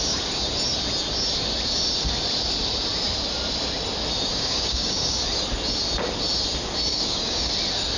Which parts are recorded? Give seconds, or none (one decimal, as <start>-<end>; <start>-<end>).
0.0-4.3; 5.2-6.9; 7.5-8.0